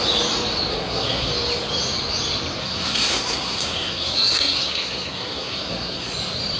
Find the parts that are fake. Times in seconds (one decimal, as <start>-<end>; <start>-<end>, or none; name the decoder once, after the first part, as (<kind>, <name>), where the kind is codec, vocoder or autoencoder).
0.7-1.3 (codec, SNAC); 2.6-6.1